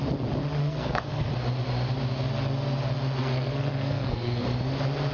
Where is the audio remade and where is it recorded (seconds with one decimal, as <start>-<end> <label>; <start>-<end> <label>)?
0.0-0.6 recorded; 0.6-1.3 remade; 1.3-3.2 recorded; 3.2-4.4 remade; 4.4-5.1 recorded